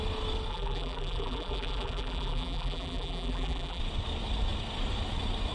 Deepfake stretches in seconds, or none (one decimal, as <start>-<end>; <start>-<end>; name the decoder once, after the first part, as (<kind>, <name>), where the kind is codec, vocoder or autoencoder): 0.5-3.8 (vocoder, BigVGAN v2)